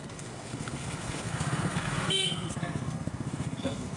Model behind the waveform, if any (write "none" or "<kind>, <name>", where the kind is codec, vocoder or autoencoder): codec, SNAC